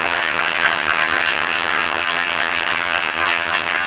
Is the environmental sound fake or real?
fake